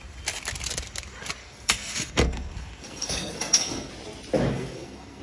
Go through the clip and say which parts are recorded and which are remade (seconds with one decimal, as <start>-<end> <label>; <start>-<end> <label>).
0.0-1.4 recorded; 1.4-3.9 remade; 3.9-4.5 recorded; 4.5-5.2 remade